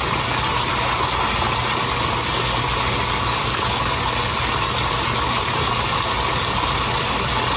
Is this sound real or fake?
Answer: real